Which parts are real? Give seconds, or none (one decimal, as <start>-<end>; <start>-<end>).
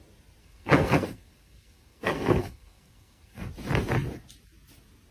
0.0-0.4; 3.5-5.1